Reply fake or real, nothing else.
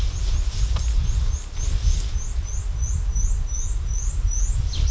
real